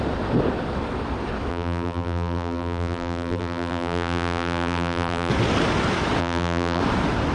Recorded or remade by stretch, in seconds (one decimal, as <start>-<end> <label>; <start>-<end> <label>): 0.0-1.5 recorded; 1.5-5.3 remade; 5.3-6.2 recorded; 6.2-6.8 remade; 6.8-7.3 recorded